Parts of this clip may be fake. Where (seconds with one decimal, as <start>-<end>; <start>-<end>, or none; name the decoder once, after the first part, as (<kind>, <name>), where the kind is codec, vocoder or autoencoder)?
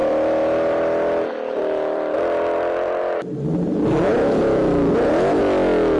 0.0-3.0 (vocoder, BigVGAN v2); 4.1-4.9